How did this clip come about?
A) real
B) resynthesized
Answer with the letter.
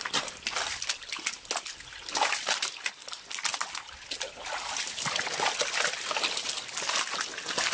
A